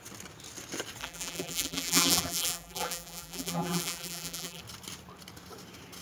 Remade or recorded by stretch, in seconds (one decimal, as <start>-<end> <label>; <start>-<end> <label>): 0.0-1.0 recorded; 1.0-4.6 remade; 4.6-6.0 recorded